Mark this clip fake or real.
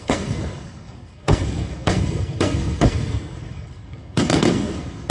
fake